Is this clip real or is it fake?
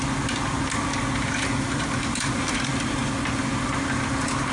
real